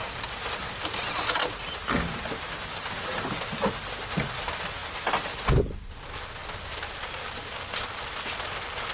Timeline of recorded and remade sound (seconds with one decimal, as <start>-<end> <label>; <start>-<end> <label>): 0.0-8.9 recorded